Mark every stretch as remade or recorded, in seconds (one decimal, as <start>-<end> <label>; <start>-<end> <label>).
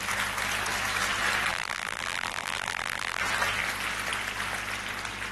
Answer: 0.0-1.5 recorded; 1.5-3.2 remade; 3.2-5.3 recorded